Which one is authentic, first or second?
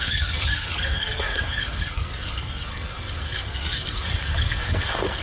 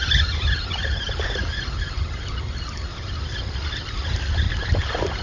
second